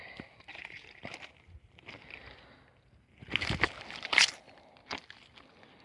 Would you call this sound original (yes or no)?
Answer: yes